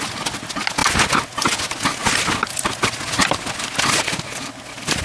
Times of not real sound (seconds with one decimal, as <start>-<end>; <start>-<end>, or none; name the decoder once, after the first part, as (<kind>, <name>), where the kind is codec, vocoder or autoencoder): none